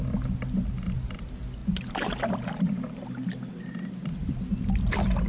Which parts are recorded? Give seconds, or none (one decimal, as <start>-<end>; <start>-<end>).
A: 0.0-5.3